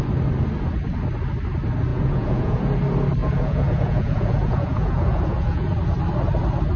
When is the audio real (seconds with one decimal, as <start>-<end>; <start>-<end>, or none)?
0.0-1.9; 2.6-3.2; 5.7-6.8